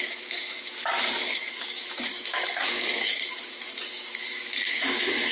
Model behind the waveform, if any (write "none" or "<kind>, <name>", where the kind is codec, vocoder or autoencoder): autoencoder, DAC-VAE